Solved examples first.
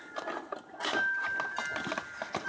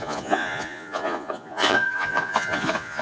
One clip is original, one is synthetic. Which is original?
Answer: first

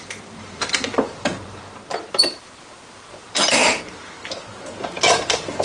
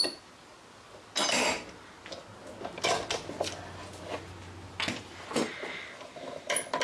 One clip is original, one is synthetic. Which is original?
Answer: second